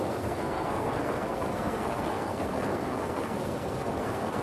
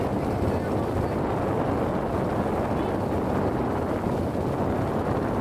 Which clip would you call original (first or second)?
second